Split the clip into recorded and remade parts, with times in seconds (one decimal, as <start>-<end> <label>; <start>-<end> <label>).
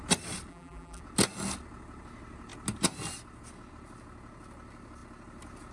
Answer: 0.0-0.5 recorded; 0.5-1.0 remade; 1.0-5.7 recorded